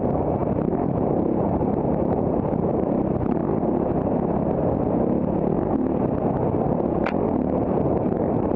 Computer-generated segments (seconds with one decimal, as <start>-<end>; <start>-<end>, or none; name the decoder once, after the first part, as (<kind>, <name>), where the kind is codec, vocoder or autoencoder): 0.0-3.4 (vocoder, BigVGAN v2); 7.2-8.6